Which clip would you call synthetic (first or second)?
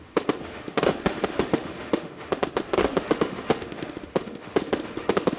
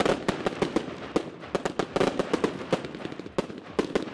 first